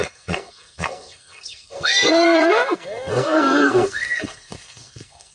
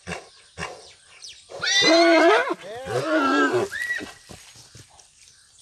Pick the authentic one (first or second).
second